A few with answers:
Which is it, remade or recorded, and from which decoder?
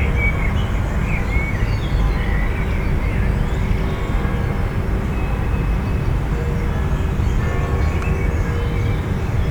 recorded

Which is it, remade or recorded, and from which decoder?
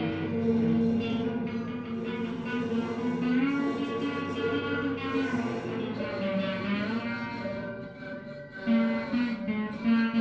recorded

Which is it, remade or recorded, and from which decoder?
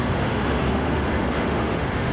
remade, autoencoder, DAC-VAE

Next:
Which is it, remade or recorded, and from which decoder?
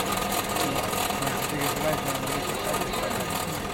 recorded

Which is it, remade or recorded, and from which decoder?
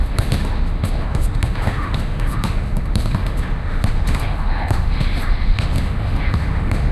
remade, autoencoder, DAC-VAE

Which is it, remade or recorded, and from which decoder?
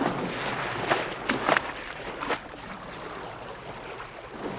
recorded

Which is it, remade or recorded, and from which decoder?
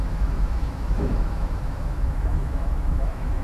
remade, autoencoder, DAC-VAE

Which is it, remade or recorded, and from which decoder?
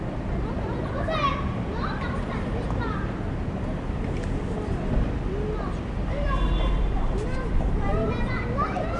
recorded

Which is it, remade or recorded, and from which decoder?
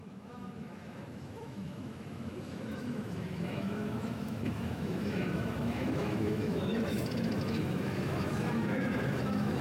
remade, autoencoder, DAC-VAE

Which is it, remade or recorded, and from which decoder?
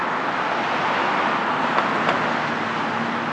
recorded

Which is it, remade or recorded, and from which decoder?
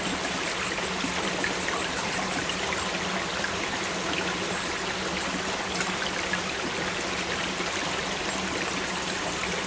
recorded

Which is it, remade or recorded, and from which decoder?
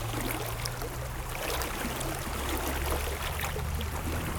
recorded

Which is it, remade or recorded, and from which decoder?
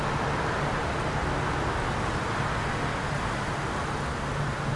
recorded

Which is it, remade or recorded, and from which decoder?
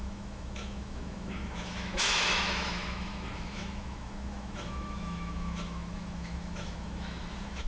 remade, autoencoder, DAC-VAE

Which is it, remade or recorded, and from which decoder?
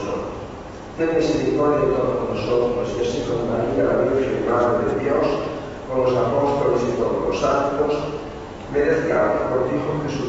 remade, autoencoder, DAC-VAE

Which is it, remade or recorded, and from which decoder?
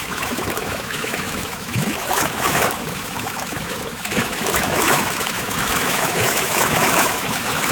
remade, autoencoder, DAC-VAE